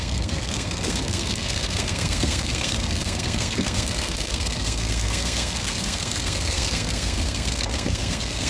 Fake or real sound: fake